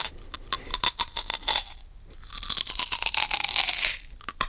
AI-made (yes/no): no